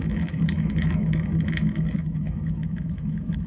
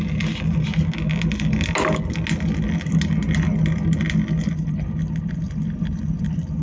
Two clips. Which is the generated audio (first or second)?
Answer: first